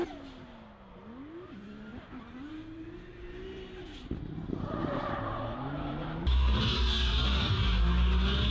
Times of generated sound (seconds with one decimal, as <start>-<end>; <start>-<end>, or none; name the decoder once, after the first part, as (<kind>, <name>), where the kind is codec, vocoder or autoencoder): 1.9-2.6 (vocoder, BigVGAN v2); 4.8-7.2